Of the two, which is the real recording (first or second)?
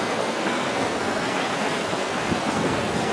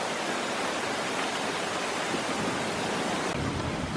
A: second